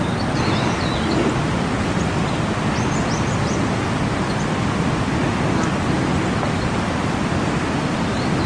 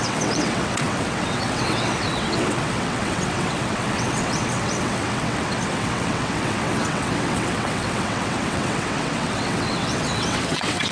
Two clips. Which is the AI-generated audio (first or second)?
second